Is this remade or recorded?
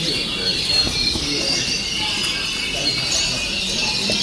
recorded